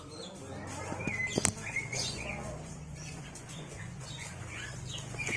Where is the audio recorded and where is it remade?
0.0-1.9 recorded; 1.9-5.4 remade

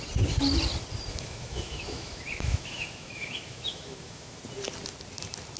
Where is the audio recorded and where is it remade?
0.0-1.1 recorded; 1.1-4.4 remade; 4.4-5.6 recorded

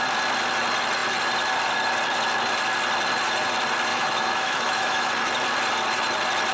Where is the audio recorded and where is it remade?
0.0-3.9 recorded; 3.9-5.1 remade; 5.1-6.5 recorded

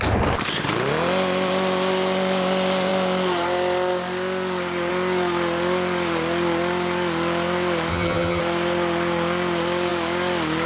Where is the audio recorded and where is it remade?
0.0-7.9 recorded; 7.9-8.4 remade; 8.4-10.7 recorded

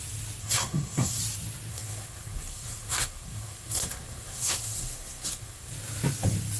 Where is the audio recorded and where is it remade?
0.0-0.4 recorded; 0.4-1.2 remade; 1.2-1.7 recorded; 1.7-5.7 remade; 5.7-6.6 recorded

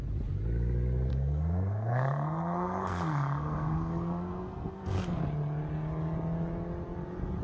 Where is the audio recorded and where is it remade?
0.0-1.1 recorded; 1.1-5.2 remade; 5.2-7.4 recorded